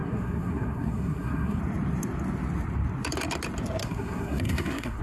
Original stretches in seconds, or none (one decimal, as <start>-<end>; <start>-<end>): 1.6-3.8